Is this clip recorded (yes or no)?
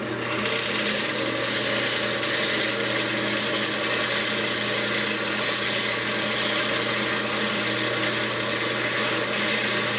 yes